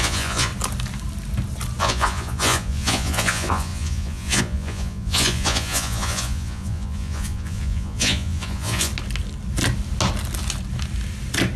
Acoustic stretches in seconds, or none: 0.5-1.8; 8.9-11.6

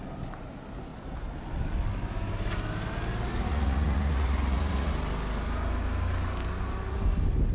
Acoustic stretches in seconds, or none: 0.0-3.5; 4.9-7.5

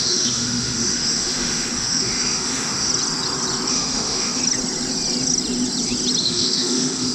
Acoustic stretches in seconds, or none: 2.9-3.7; 4.4-6.2

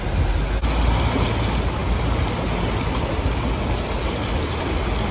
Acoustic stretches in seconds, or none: 0.0-5.1